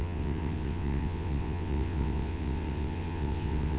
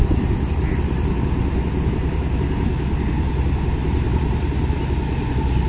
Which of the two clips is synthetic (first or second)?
first